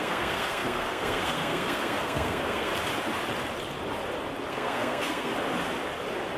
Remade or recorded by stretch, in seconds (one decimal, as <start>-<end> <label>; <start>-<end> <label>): 0.0-2.7 remade; 2.7-4.5 recorded; 4.5-5.3 remade; 5.3-6.4 recorded